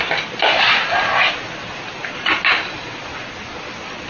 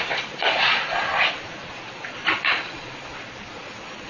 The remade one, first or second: second